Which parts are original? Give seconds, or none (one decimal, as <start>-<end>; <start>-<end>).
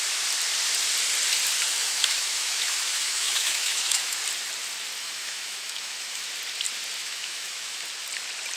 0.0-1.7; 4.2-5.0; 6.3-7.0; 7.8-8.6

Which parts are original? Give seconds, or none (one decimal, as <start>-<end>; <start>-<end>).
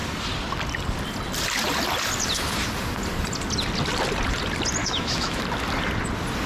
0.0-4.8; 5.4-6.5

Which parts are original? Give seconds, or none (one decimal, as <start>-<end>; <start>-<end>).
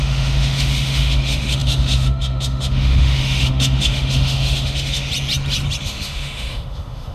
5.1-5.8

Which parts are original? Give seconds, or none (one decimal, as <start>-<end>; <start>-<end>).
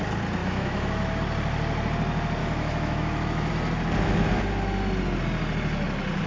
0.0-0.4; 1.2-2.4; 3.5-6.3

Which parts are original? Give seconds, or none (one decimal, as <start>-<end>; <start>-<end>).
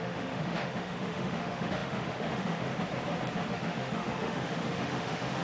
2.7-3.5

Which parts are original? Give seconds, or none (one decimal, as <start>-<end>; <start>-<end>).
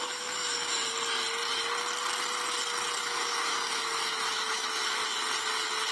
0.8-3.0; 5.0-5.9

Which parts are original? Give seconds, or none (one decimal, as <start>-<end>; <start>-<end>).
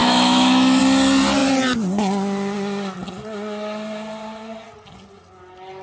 0.8-5.8